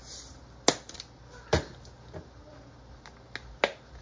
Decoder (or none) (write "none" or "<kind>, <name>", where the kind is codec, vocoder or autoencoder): none